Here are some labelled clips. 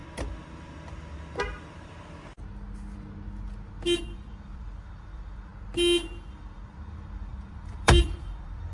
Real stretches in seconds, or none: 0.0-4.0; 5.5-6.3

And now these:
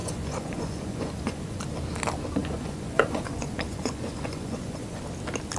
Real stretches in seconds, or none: 1.6-2.4; 5.0-5.6

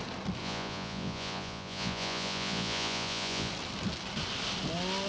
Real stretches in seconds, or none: 0.0-0.4; 3.5-5.1

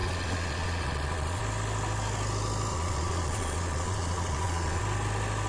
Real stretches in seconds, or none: 1.4-2.7; 4.8-5.5

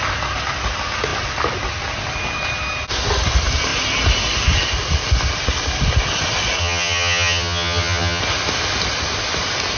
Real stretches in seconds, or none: 0.0-6.6; 8.2-9.8